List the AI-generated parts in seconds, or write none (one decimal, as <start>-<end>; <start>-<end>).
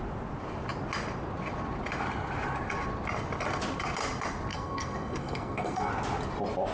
4.5-5.9